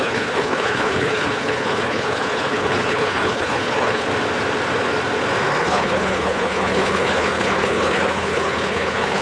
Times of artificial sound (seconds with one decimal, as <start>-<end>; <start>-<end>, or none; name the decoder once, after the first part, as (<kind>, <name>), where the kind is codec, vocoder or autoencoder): 0.0-4.1 (codec, HILCodec); 5.6-9.2